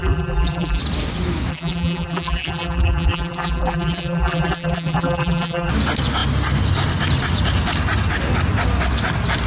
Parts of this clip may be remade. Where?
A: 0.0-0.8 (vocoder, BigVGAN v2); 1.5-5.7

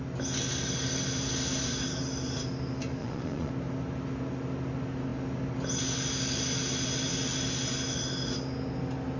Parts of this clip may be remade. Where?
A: 3.0-3.5 (vocoder, Vocos)

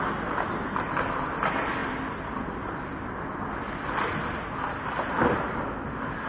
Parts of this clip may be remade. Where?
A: 1.8-3.9 (vocoder, BigVGAN v2)